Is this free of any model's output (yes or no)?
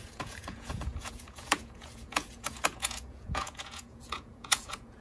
no